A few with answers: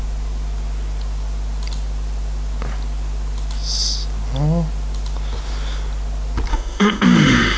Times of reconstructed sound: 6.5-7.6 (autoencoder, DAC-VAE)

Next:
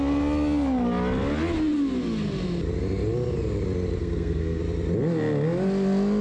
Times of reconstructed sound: 4.0-4.6 (codec, SNAC)